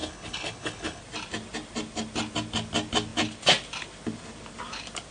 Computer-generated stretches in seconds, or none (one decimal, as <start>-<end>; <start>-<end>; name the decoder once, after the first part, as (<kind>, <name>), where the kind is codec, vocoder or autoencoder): 0.0-1.0 (codec, HILCodec)

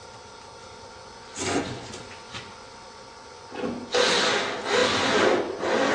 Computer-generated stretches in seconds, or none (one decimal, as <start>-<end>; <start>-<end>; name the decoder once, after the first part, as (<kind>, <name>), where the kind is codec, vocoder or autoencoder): 0.6-4.1 (vocoder, Vocos)